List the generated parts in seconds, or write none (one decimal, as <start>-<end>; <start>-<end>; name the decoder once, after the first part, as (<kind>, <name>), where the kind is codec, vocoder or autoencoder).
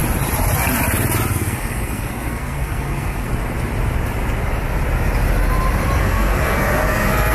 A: 1.3-3.3 (codec, SNAC); 6.0-7.3